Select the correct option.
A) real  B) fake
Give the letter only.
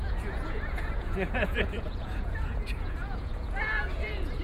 B